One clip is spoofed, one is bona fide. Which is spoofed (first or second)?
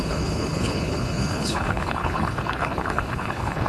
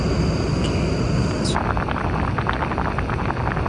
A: first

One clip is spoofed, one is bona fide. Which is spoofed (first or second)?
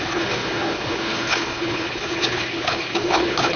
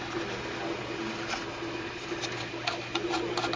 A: first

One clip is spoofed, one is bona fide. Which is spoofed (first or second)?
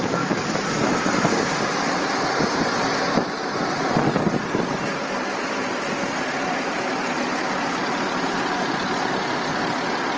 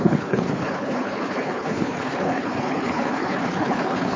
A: second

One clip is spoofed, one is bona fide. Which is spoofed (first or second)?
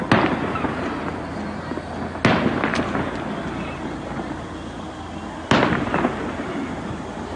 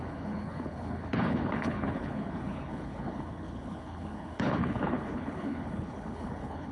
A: second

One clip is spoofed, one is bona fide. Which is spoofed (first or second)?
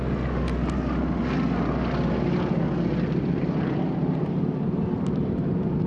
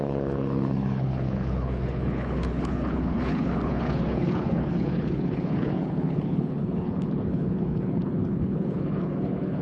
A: second